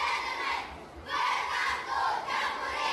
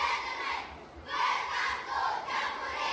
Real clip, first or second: first